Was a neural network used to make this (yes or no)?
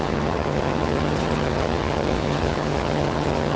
yes